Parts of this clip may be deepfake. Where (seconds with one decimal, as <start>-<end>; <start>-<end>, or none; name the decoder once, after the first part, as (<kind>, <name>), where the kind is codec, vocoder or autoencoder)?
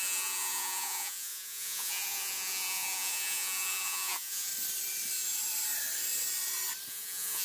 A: 0.0-4.5 (vocoder, Vocos); 6.9-7.4